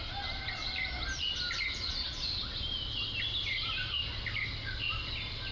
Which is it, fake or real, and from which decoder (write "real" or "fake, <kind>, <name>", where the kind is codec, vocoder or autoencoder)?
real